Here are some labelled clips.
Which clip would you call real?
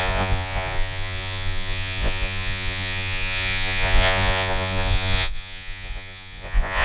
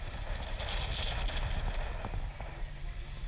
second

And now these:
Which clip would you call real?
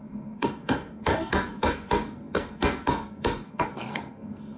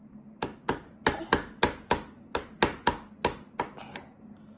second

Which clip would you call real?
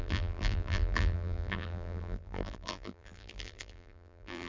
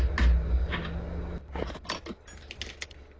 second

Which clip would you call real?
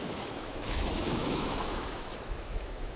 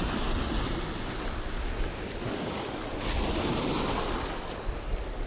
second